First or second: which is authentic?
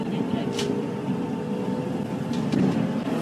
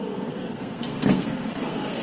first